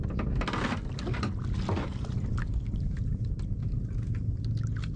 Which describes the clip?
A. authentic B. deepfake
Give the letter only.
A